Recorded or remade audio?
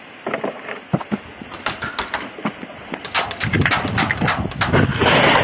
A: recorded